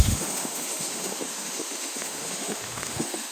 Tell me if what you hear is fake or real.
fake